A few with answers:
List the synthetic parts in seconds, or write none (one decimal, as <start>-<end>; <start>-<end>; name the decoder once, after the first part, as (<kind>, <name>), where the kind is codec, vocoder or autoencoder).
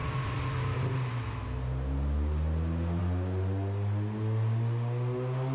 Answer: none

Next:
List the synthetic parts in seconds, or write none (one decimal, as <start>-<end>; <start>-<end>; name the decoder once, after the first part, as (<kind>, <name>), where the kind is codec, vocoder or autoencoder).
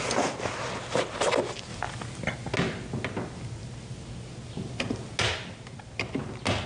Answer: none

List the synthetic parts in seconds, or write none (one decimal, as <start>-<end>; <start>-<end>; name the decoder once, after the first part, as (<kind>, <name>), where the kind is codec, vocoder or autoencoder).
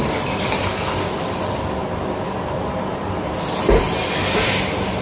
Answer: none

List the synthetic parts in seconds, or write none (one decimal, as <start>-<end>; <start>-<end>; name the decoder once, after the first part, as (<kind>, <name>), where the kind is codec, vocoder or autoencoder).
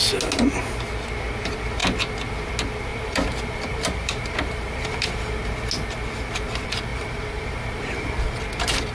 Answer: 2.9-5.3 (vocoder, BigVGAN v2); 6.9-8.4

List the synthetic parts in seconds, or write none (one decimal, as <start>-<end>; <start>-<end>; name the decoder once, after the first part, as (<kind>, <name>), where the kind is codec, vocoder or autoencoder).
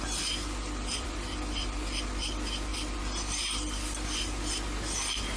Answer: none